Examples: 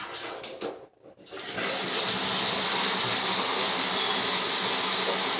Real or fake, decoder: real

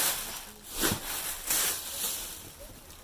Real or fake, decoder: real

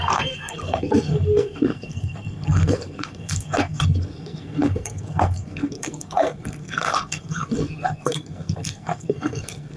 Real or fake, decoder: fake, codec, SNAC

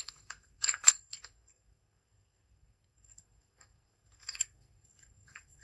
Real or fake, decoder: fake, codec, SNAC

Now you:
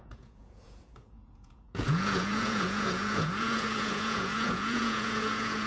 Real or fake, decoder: fake, vocoder, Vocos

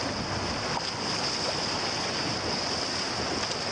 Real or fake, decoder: real